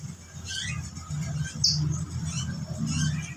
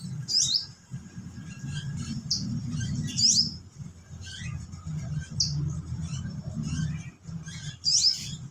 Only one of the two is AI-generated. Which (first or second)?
second